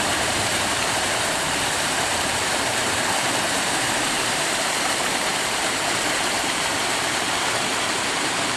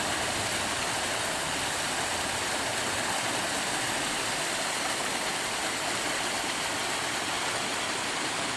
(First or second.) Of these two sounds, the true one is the second